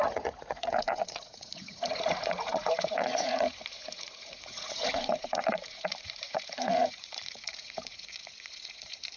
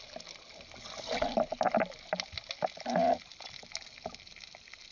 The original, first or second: second